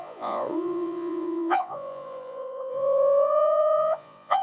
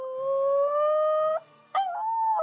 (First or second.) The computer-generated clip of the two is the first